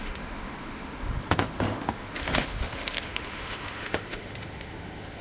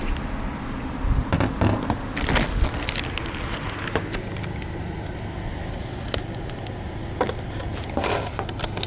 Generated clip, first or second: first